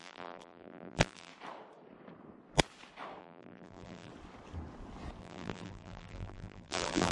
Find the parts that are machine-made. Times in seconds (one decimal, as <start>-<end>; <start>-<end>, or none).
0.0-1.3; 3.2-4.1; 5.2-7.1